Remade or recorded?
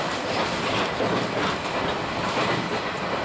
recorded